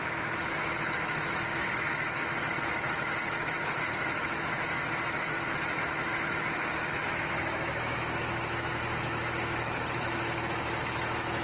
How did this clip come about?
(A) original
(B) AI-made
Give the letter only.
B